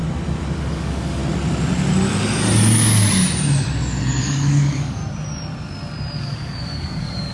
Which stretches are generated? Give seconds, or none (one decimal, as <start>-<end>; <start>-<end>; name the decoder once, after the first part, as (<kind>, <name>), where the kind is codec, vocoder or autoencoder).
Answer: 0.6-1.2 (codec, DAC); 4.2-5.0; 6.2-7.3